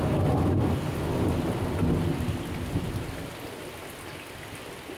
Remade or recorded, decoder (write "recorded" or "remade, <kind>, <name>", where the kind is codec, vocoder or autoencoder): recorded